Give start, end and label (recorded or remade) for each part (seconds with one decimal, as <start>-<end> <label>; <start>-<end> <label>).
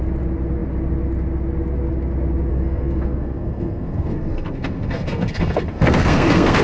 0.0-2.5 recorded; 2.5-6.6 remade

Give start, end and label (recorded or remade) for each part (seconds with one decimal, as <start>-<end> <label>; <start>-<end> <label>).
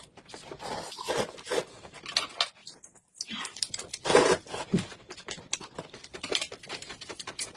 0.0-7.6 recorded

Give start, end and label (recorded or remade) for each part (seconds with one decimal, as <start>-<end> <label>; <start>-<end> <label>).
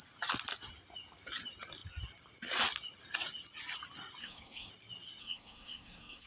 0.0-4.2 recorded; 4.2-4.7 remade; 4.7-5.2 recorded; 5.2-6.3 remade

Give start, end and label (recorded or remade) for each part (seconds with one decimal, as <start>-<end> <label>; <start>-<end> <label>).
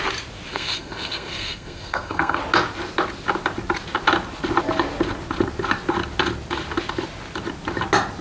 0.0-0.5 recorded; 0.5-2.4 remade; 2.4-8.2 recorded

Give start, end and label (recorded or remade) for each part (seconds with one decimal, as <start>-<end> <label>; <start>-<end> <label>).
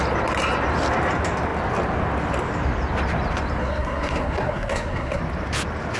0.0-3.6 recorded; 3.6-5.2 remade; 5.2-6.0 recorded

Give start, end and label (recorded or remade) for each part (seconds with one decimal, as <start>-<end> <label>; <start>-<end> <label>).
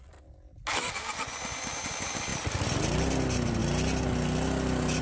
0.0-5.0 recorded